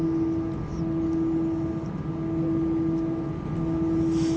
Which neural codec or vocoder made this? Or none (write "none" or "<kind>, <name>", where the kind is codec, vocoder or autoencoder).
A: none